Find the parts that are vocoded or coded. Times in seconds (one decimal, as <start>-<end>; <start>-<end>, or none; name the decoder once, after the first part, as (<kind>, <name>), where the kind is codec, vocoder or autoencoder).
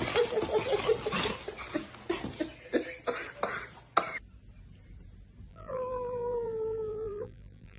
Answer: 5.5-7.8 (vocoder, BigVGAN v2)